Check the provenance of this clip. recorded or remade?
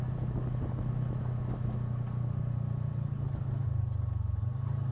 recorded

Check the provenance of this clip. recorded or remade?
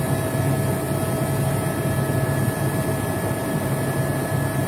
recorded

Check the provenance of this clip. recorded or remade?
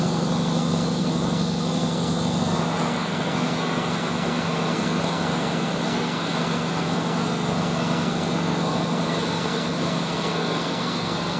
remade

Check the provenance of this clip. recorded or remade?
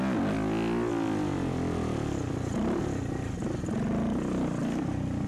recorded